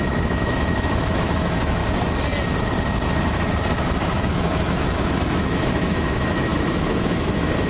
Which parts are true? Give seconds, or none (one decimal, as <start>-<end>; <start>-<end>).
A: 1.8-4.3